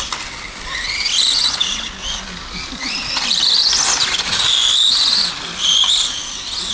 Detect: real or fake real